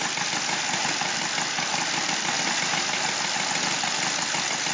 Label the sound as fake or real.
real